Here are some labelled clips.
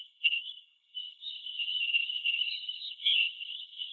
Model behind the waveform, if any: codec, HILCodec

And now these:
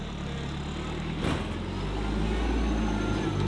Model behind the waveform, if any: none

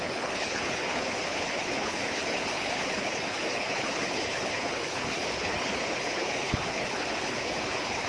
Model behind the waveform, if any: codec, HILCodec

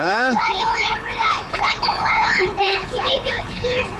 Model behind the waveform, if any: codec, HILCodec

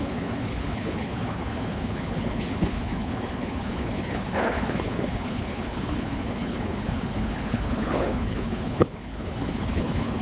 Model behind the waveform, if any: codec, HILCodec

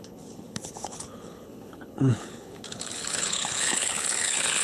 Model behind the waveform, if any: codec, HILCodec